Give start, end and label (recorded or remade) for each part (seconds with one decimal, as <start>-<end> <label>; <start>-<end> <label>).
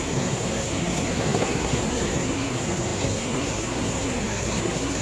0.0-5.0 remade